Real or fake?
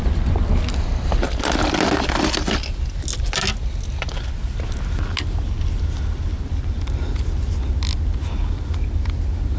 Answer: real